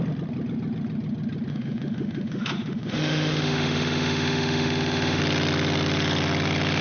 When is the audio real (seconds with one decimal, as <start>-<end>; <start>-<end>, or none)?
0.0-1.5; 5.2-6.8